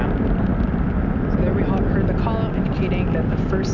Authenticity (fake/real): real